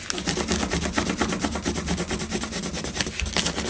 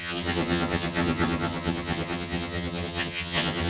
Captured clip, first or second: first